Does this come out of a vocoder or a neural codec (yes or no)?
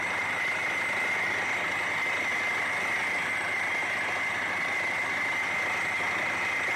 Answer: no